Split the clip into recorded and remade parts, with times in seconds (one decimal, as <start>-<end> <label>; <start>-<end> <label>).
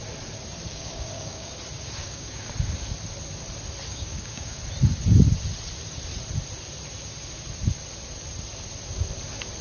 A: 0.0-0.7 recorded; 0.7-1.5 remade; 1.5-2.0 recorded; 2.0-2.5 remade; 2.5-3.9 recorded; 3.9-4.6 remade; 4.6-9.6 recorded